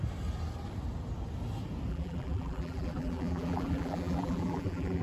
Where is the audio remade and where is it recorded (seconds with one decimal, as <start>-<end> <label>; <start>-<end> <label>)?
0.0-1.9 recorded; 1.9-5.0 remade